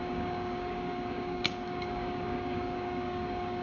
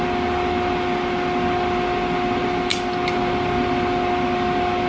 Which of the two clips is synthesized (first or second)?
first